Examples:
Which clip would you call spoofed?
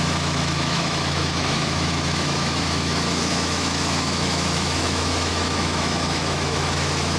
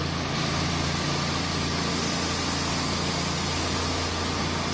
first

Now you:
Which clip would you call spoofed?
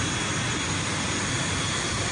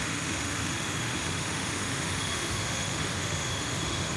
second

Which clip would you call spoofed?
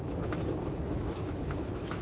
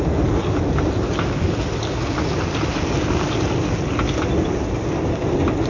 first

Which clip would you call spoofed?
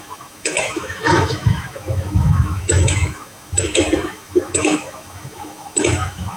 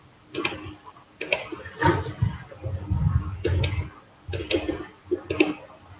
first